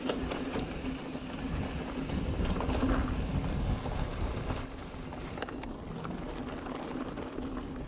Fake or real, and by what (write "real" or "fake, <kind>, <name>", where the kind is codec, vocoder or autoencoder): real